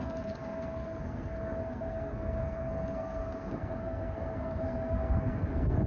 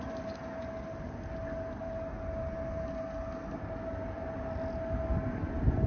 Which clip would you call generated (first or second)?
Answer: first